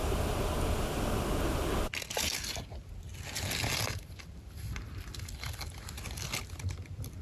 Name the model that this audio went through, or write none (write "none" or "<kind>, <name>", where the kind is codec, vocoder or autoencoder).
none